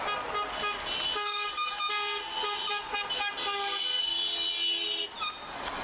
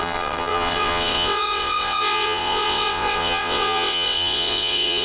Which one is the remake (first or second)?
second